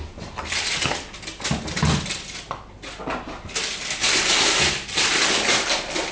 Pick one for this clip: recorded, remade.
recorded